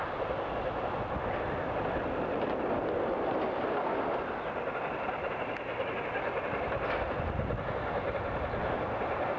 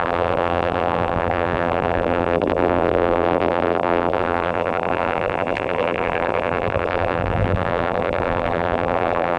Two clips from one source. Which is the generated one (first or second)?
second